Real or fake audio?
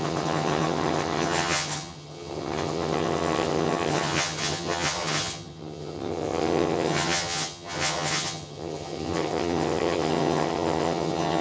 fake